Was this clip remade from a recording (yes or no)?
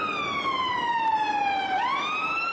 no